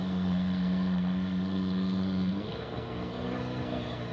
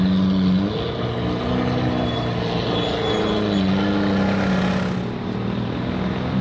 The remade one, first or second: first